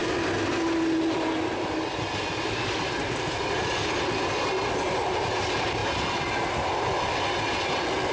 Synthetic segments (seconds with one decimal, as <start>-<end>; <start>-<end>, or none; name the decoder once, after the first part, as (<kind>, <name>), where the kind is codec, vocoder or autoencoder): none